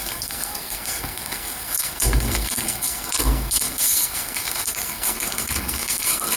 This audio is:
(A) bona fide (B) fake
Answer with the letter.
B